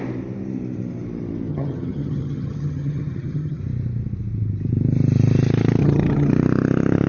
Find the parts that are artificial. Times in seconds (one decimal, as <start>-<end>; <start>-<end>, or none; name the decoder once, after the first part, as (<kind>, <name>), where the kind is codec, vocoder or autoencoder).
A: 1.5-3.6 (vocoder, HiFi-GAN); 5.8-6.3

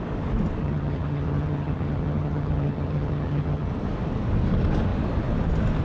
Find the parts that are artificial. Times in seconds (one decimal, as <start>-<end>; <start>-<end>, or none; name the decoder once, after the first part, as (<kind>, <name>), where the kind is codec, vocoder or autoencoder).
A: 0.6-3.7 (vocoder, HiFi-GAN)

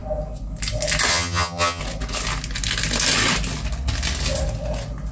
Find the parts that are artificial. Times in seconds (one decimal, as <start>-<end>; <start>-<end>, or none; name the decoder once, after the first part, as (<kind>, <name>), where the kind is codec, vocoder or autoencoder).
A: 1.1-1.8 (vocoder, HiFi-GAN)

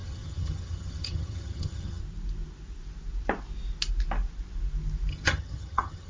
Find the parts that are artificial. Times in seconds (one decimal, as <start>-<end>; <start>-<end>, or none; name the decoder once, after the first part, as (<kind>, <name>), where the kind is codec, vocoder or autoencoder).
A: 0.0-2.0 (vocoder, HiFi-GAN); 5.1-6.1

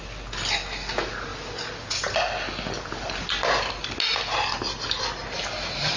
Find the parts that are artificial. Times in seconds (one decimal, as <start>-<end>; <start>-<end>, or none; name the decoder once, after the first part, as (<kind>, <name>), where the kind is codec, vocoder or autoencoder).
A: none